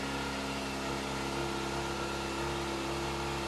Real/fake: real